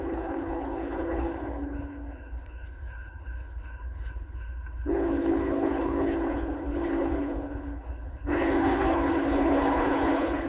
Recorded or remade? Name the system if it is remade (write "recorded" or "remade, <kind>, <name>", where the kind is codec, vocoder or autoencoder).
remade, codec, HILCodec